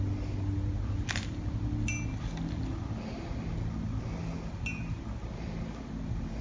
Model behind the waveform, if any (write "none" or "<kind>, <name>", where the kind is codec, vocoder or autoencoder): none